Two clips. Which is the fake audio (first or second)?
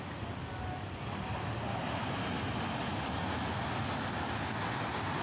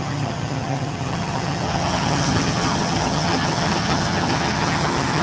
second